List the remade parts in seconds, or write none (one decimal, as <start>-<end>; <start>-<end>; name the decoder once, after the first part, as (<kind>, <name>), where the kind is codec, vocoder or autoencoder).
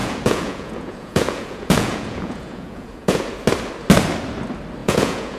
0.0-3.2 (vocoder, Vocos); 4.8-5.4